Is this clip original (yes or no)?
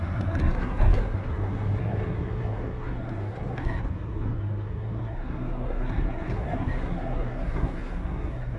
no